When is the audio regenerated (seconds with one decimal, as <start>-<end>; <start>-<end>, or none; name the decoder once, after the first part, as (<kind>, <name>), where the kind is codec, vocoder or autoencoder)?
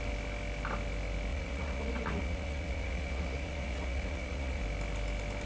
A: 1.3-4.6 (vocoder, Vocos)